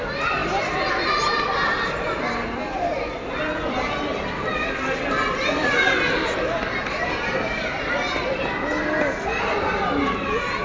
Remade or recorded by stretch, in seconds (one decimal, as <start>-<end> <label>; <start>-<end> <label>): 0.0-10.6 recorded